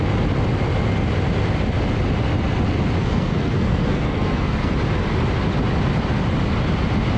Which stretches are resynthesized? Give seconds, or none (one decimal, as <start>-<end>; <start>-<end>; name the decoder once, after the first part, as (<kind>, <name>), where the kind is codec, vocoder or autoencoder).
3.0-4.7 (codec, SNAC)